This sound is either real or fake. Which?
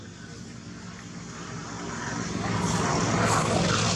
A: real